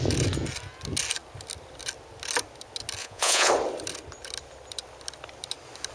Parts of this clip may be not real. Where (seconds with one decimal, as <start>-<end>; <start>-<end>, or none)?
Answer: 3.0-3.5